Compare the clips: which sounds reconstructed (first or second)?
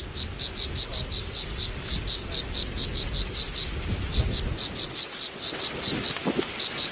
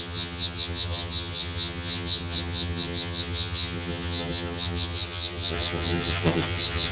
second